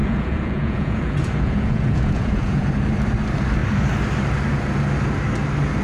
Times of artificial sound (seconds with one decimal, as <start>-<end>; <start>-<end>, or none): 0.0-2.7